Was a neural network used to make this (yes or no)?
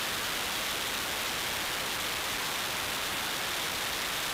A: no